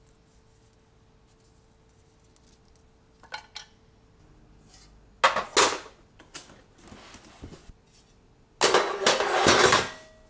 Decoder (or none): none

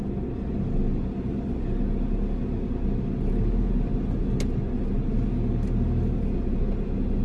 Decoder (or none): none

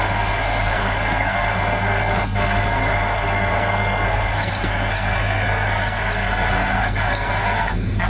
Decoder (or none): codec, SNAC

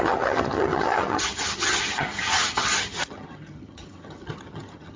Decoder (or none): vocoder, HiFi-GAN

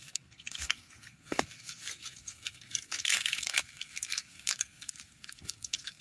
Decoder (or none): codec, SNAC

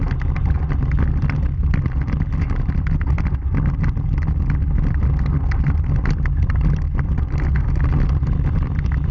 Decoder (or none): none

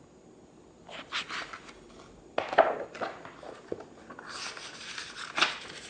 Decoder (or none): none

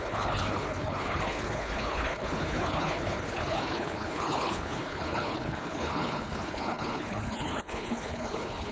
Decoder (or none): codec, HILCodec